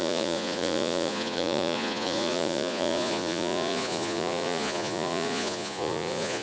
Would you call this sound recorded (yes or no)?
no